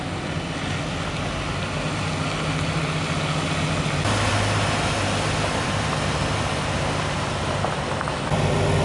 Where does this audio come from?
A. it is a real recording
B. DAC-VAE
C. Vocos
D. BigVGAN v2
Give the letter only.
A